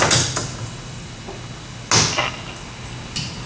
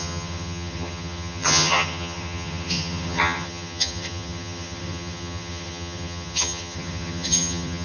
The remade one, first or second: second